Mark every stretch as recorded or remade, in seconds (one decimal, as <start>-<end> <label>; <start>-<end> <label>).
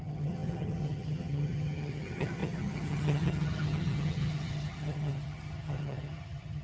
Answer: 0.0-6.6 remade